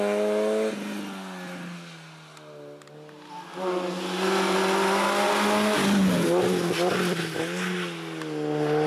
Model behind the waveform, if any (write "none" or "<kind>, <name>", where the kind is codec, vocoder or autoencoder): none